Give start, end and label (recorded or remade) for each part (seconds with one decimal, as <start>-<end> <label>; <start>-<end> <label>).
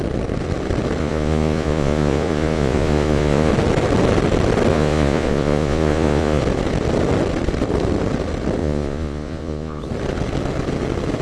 0.0-1.0 recorded; 1.0-3.5 remade; 3.5-4.7 recorded; 4.7-6.4 remade; 6.4-8.6 recorded; 8.6-9.8 remade; 9.8-11.2 recorded